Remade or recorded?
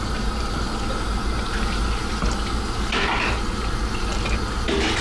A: recorded